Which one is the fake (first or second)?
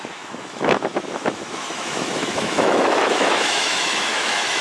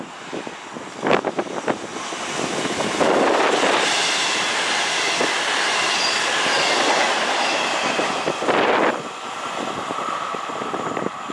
first